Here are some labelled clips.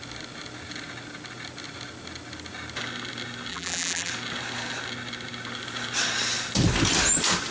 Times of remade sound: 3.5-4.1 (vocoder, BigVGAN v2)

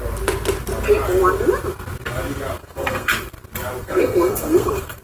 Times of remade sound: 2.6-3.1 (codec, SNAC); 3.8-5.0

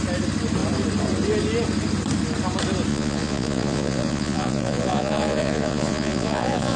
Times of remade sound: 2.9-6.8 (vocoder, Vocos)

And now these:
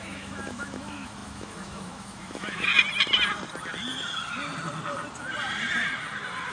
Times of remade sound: 0.0-2.7 (autoencoder, DAC-VAE)